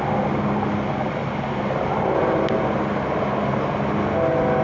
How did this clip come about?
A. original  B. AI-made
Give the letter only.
A